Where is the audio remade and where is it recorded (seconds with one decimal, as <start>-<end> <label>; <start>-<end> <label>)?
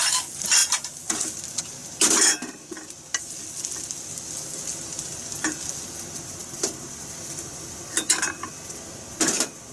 0.0-9.7 recorded